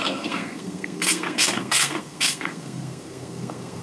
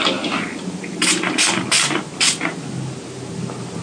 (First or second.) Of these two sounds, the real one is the second